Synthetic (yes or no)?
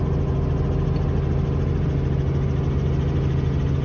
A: no